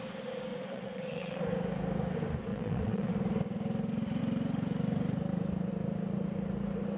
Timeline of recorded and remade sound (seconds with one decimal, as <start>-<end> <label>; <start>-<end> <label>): 0.0-0.5 recorded; 0.5-1.4 remade; 1.4-2.5 recorded; 2.5-3.1 remade; 3.1-7.0 recorded